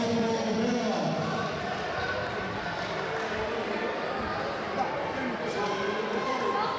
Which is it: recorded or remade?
recorded